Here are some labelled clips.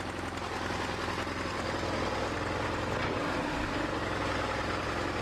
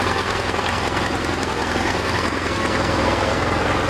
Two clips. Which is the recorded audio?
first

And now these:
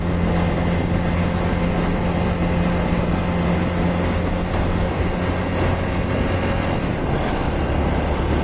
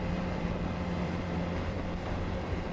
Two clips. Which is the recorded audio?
first